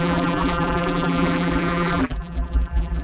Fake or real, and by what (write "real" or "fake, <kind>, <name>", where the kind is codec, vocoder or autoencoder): fake, vocoder, BigVGAN v2